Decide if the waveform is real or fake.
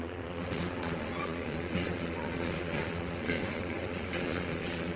fake